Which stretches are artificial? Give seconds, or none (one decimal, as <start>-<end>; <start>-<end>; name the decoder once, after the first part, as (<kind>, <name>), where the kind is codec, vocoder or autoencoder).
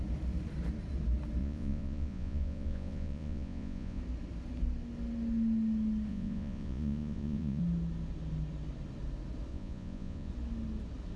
1.4-4.0 (vocoder, Vocos); 6.1-7.6; 9.5-10.3